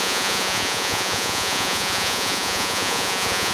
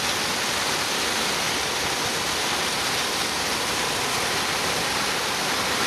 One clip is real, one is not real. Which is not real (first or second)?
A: first